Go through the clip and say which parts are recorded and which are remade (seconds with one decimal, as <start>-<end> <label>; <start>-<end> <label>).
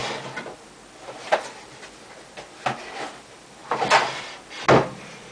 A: 0.0-5.3 recorded